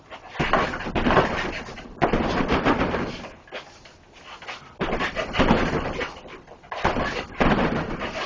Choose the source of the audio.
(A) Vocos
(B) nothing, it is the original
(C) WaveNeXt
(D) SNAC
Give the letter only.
B